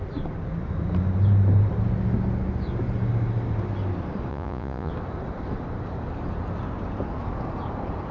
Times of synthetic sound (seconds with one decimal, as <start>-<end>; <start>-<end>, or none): 4.3-4.9